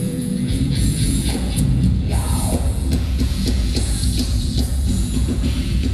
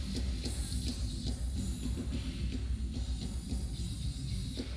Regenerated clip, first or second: first